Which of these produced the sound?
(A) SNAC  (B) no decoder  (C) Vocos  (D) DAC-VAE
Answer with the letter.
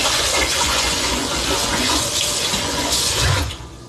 C